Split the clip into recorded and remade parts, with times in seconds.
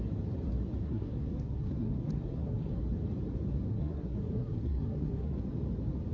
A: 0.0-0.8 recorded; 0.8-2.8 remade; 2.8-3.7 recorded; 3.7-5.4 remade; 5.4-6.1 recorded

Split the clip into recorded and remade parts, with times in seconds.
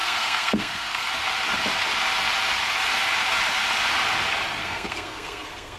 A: 0.0-1.1 remade; 1.1-4.6 recorded; 4.6-5.8 remade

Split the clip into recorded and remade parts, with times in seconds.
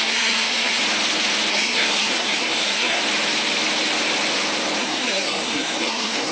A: 0.0-0.8 remade; 0.8-1.5 recorded; 1.5-3.0 remade; 3.0-4.8 recorded; 4.8-6.3 remade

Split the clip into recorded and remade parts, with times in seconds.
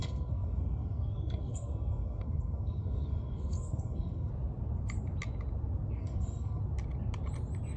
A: 0.0-4.3 remade; 4.3-6.0 recorded; 6.0-6.6 remade; 6.6-7.8 recorded